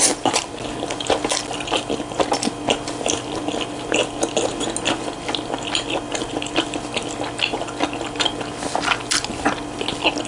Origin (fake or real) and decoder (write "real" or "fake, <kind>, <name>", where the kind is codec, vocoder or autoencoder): real